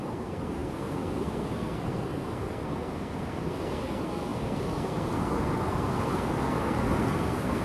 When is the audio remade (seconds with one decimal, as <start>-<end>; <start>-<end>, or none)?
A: 0.0-7.6